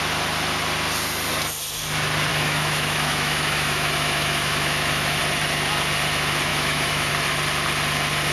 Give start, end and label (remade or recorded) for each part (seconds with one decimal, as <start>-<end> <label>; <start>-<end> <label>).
0.0-2.3 recorded; 2.3-5.2 remade; 5.2-6.5 recorded; 6.5-7.1 remade; 7.1-8.3 recorded